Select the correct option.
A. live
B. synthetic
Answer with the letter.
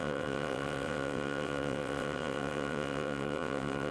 B